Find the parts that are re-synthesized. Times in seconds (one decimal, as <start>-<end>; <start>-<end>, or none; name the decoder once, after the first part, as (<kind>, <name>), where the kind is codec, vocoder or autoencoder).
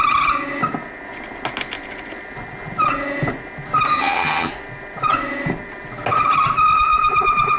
3.9-4.5 (vocoder, HiFi-GAN)